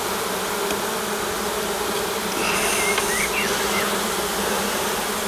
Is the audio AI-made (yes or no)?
no